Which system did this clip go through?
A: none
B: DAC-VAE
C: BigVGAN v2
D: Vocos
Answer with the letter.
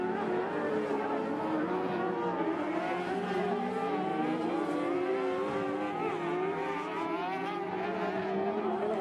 A